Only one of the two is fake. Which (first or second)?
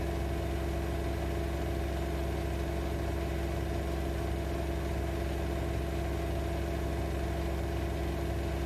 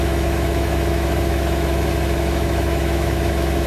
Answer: second